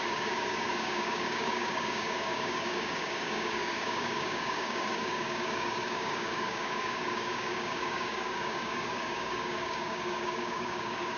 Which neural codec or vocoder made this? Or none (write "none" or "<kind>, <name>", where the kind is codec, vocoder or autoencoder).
codec, DAC